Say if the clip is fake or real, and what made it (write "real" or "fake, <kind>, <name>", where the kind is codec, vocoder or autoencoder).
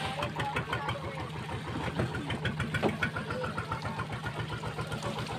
real